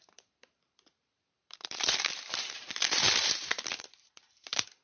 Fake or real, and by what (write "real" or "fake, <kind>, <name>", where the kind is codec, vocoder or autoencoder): fake, vocoder, BigVGAN v2